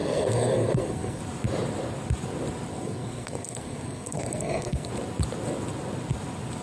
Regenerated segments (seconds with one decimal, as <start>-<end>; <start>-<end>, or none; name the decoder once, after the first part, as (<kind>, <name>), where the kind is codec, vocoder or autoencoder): 0.0-1.2 (codec, SNAC); 2.7-4.9

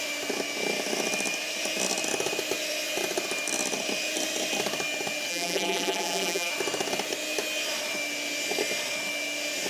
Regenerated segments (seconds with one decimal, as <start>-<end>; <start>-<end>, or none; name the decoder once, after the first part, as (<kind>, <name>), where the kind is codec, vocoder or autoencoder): 5.3-6.5 (vocoder, BigVGAN v2)

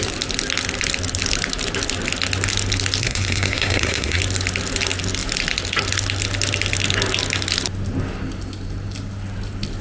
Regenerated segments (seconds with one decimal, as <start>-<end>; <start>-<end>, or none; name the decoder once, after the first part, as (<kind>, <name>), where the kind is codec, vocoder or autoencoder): 3.0-4.2 (codec, SNAC)

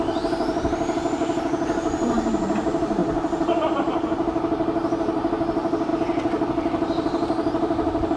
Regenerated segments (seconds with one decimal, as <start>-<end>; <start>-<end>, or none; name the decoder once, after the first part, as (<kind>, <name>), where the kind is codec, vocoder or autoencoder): 0.0-8.2 (vocoder, BigVGAN v2)